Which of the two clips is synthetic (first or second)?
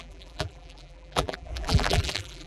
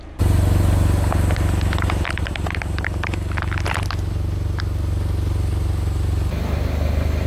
first